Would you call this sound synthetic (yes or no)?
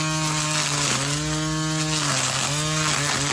no